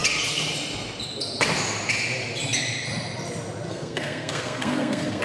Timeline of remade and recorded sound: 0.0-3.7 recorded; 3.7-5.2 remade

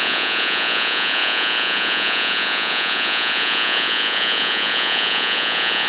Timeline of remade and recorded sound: 0.0-5.9 remade

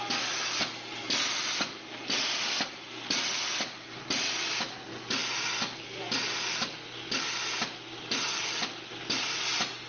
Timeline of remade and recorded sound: 0.0-9.9 recorded

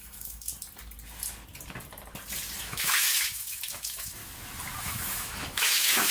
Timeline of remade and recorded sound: 0.0-0.5 remade; 0.5-2.6 recorded; 2.6-4.2 remade; 4.2-4.8 recorded; 4.8-6.1 remade

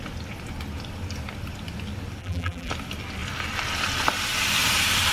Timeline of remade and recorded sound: 0.0-2.2 recorded; 2.2-2.7 remade; 2.7-5.1 recorded

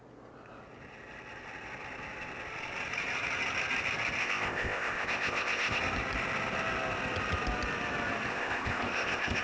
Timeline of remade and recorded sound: 0.0-4.2 recorded; 4.2-5.8 remade; 5.8-8.3 recorded; 8.3-9.4 remade

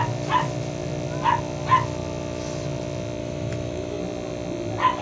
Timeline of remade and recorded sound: 0.0-3.2 recorded; 3.2-4.0 remade; 4.0-5.0 recorded

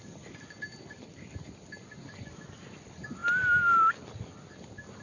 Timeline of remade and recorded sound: 0.0-5.0 recorded